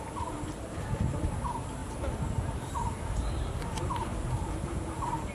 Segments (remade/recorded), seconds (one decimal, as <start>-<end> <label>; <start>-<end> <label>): 0.0-5.3 recorded